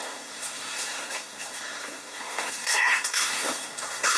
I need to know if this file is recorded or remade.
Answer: remade